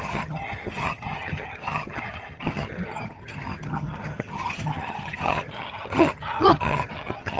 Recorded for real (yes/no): no